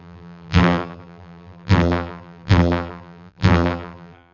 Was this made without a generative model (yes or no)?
no